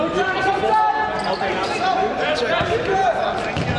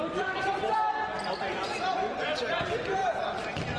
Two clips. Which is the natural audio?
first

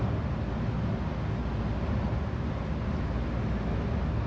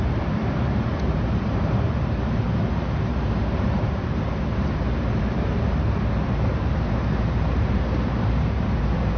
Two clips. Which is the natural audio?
first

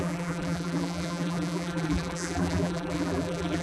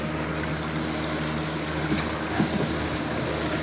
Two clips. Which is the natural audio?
second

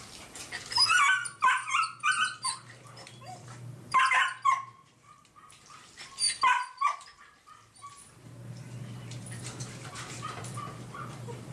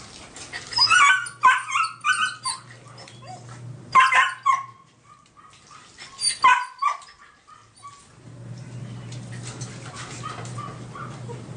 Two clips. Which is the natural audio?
second